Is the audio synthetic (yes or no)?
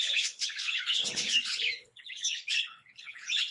yes